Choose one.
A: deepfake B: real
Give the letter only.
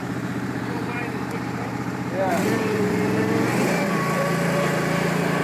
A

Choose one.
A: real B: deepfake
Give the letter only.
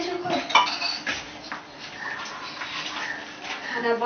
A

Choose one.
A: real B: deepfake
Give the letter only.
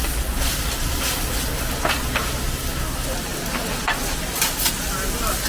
A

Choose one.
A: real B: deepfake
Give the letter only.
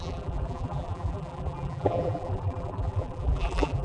B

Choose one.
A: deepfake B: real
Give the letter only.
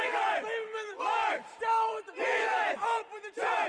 A